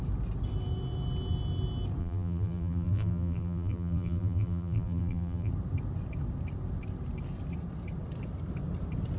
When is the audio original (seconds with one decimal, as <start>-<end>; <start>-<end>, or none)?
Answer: 0.0-2.0; 5.5-9.2